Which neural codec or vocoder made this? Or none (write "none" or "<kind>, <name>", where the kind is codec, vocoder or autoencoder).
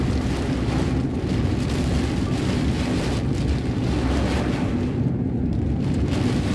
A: none